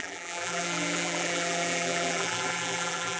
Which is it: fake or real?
fake